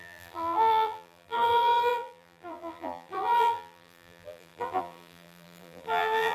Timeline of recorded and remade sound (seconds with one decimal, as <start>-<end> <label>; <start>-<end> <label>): 0.0-6.3 remade